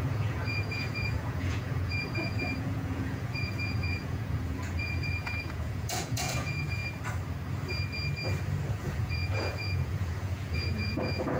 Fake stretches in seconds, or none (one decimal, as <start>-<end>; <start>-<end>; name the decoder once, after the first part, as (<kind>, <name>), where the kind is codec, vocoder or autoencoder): 0.0-6.8 (vocoder, Vocos); 8.7-11.4

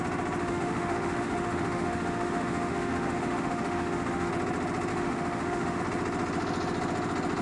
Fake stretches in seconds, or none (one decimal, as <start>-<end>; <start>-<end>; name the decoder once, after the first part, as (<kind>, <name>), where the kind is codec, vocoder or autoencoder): 0.4-4.3 (autoencoder, DAC-VAE); 4.9-5.8

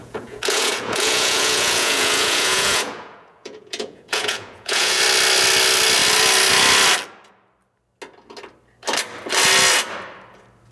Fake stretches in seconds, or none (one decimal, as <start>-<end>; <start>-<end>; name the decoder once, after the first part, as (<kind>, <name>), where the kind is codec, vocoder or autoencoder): 0.0-5.0 (vocoder, Vocos)

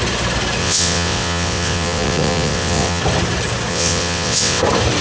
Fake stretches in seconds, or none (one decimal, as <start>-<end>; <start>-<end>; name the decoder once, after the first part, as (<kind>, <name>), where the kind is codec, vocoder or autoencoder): 0.6-3.0 (vocoder, WaveNeXt); 3.7-4.6

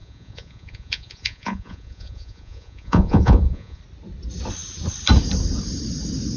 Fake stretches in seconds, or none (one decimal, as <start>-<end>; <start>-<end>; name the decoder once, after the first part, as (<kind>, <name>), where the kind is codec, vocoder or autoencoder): 0.0-3.8 (vocoder, Vocos)